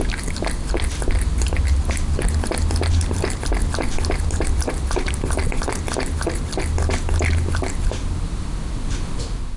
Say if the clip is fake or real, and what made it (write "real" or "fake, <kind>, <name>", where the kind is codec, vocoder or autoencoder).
real